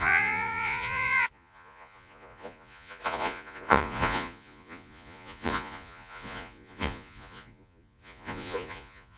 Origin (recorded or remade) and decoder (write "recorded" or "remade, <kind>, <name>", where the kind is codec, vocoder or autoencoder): remade, vocoder, Vocos